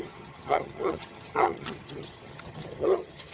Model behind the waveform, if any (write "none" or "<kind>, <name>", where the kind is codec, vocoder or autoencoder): vocoder, HiFi-GAN